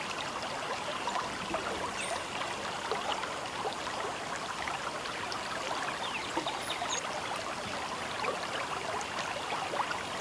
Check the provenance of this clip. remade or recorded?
recorded